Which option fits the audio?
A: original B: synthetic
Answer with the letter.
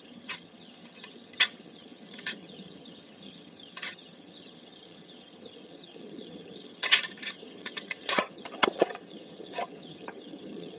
B